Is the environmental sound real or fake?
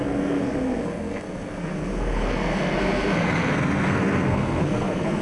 fake